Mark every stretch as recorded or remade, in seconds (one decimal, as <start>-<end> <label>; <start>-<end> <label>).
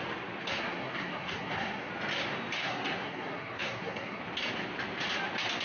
0.0-0.4 recorded; 0.4-1.9 remade; 1.9-2.6 recorded; 2.6-4.2 remade; 4.2-5.6 recorded